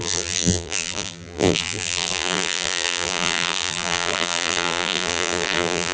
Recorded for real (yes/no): no